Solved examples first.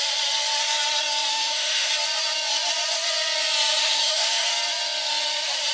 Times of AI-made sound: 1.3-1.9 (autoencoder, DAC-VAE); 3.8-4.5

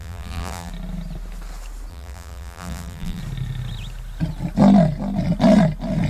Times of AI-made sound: 0.0-0.7 (vocoder, BigVGAN v2); 1.9-3.2

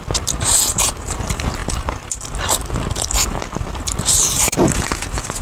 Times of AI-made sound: none

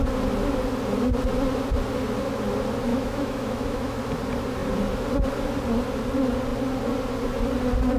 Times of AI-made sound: 2.9-4.0 (autoencoder, DAC-VAE)

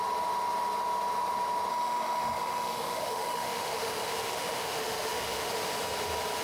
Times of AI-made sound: 1.7-5.5 (autoencoder, DAC-VAE)

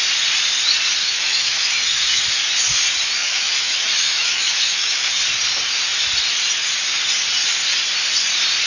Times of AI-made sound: 1.0-2.2 (autoencoder, DAC-VAE); 3.2-5.2